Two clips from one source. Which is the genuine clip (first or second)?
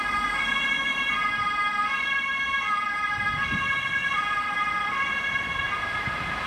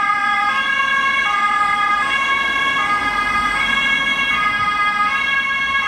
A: second